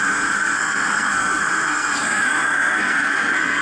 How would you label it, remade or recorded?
remade